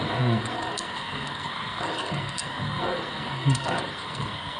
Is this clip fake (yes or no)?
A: yes